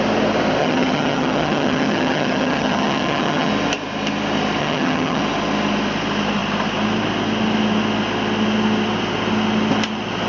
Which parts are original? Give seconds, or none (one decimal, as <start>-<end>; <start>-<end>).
0.0-0.6; 3.5-4.6; 5.2-10.3